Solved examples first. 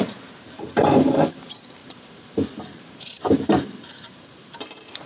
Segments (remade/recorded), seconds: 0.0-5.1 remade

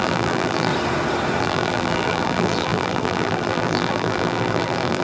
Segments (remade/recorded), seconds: 0.0-0.7 remade; 0.7-1.4 recorded; 1.4-5.0 remade

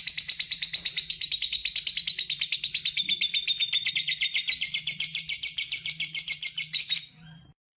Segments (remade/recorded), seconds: 0.0-1.6 remade; 1.6-3.9 recorded; 3.9-7.8 remade